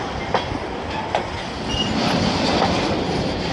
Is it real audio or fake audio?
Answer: real